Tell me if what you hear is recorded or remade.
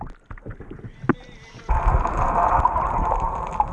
recorded